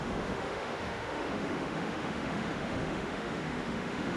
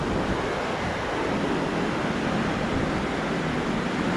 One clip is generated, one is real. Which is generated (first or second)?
first